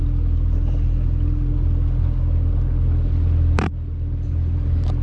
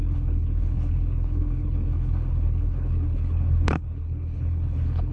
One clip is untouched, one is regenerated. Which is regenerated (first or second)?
second